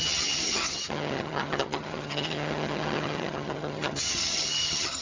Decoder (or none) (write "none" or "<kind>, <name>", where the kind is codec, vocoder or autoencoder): vocoder, HiFi-GAN